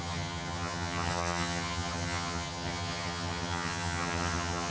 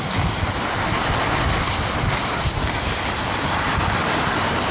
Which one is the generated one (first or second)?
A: first